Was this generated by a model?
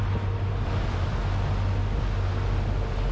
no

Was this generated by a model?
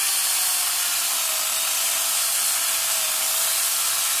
no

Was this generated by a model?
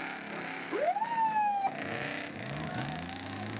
yes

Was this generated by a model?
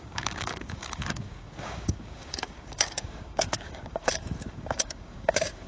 yes